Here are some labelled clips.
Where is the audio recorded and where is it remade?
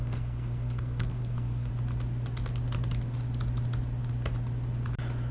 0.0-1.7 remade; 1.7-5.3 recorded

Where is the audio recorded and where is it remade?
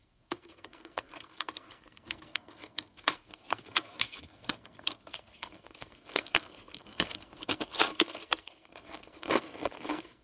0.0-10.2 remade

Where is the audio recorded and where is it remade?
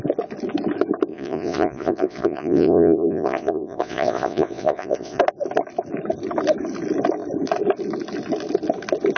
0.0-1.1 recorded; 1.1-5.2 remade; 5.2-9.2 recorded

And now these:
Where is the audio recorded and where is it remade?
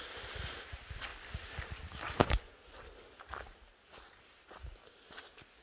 0.0-2.2 recorded; 2.2-2.8 remade; 2.8-5.6 recorded